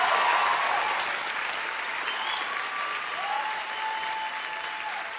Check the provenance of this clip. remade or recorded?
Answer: recorded